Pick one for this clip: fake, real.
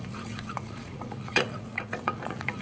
fake